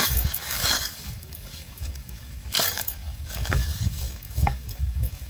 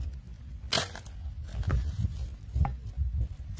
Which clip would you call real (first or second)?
second